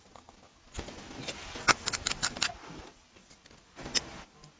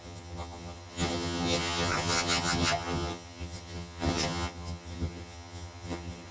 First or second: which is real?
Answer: first